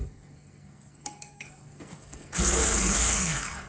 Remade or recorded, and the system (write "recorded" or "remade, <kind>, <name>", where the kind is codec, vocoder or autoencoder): remade, codec, SNAC